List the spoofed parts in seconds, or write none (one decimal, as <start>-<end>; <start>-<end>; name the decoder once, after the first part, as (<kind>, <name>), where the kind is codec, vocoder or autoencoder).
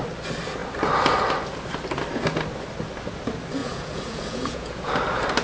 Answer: 3.6-4.9 (vocoder, Vocos)